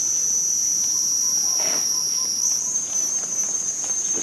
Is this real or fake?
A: fake